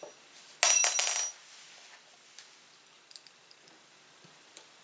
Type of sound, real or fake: real